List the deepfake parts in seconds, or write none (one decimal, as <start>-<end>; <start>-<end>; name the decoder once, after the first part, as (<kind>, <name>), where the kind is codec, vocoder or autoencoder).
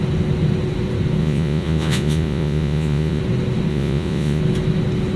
1.2-3.2 (vocoder, Vocos); 3.7-4.4